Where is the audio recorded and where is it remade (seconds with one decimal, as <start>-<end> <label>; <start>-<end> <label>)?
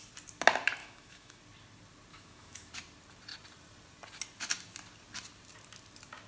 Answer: 0.0-0.8 recorded; 0.8-1.4 remade; 1.4-2.1 recorded; 2.1-2.7 remade; 2.7-6.3 recorded